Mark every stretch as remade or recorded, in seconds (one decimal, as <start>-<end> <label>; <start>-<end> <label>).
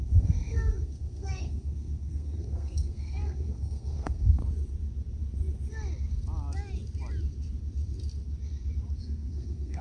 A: 0.0-4.4 remade; 4.4-9.0 recorded; 9.0-9.8 remade